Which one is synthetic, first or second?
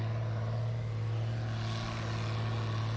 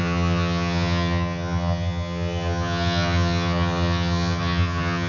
second